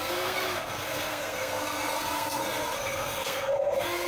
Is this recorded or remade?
remade